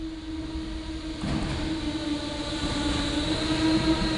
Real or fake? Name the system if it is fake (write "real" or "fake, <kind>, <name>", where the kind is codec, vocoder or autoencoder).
real